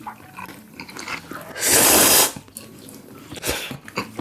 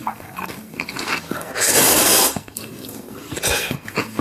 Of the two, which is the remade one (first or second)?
second